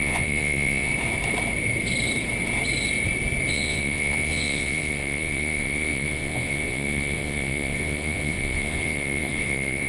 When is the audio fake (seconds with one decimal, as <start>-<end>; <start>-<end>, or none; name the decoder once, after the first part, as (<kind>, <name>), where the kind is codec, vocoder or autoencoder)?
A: 0.0-0.9 (vocoder, Vocos); 3.5-9.9